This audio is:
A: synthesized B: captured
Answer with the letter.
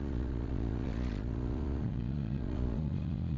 A